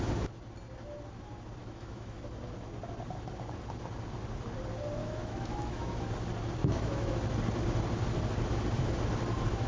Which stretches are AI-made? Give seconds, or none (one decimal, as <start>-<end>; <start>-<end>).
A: 1.6-2.2; 5.0-6.1; 6.6-7.2